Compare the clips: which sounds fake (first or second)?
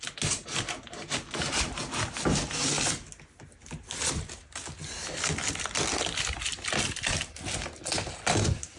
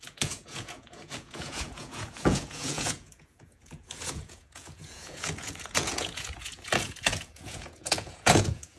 second